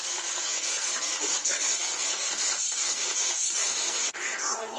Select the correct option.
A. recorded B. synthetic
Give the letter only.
B